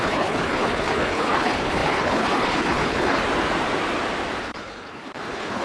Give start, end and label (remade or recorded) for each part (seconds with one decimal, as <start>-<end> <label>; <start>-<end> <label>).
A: 0.0-3.2 remade; 3.2-4.4 recorded; 4.4-5.6 remade